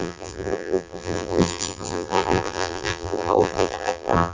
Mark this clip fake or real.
fake